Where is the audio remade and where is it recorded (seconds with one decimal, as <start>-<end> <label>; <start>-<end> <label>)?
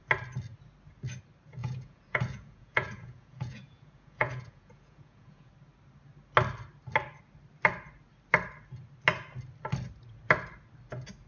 0.0-1.6 recorded; 1.6-5.5 remade; 5.5-11.3 recorded